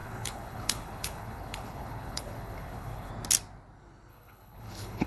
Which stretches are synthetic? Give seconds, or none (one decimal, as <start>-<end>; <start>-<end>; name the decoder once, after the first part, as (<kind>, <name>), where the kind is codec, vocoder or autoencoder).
0.0-3.1 (codec, HILCodec); 4.1-5.1

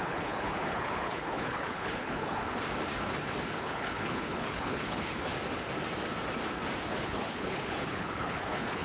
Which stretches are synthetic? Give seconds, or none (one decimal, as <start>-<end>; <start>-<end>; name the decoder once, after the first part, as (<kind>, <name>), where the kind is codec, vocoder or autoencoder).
0.0-2.4 (codec, HILCodec); 3.5-5.3; 6.9-8.8

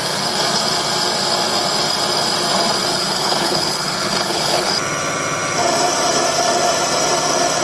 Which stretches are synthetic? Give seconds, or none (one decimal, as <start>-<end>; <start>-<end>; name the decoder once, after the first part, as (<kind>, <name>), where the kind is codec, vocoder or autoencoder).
2.9-4.7 (codec, HILCodec)

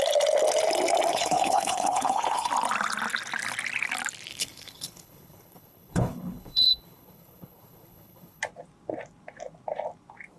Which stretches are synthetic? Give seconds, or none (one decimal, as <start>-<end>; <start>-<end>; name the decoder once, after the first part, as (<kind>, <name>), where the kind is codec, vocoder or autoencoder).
1.1-2.5 (codec, HILCodec); 4.3-8.4

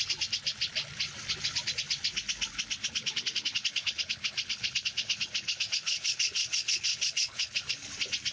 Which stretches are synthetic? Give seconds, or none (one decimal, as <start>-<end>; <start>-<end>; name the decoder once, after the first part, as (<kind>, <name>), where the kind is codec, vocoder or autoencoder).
2.8-7.8 (codec, HILCodec)